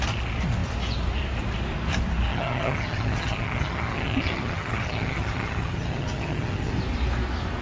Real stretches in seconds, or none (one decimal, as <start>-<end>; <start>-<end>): 0.0-2.3; 6.7-7.6